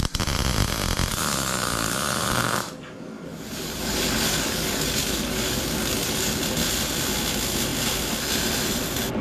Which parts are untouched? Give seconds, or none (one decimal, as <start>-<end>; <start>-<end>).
0.0-1.1; 6.4-9.2